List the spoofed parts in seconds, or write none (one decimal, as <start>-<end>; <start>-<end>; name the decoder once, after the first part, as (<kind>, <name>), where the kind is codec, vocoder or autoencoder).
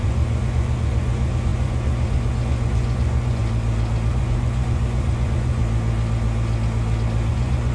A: 0.0-3.4 (vocoder, Vocos); 4.1-5.6; 7.3-7.7